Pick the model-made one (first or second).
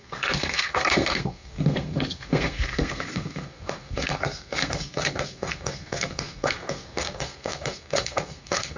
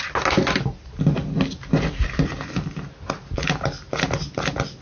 first